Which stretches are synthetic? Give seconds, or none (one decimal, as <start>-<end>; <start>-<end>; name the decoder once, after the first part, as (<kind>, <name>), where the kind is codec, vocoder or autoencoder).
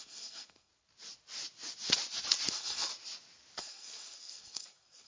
0.0-0.7 (codec, SNAC); 2.5-2.9; 3.6-5.1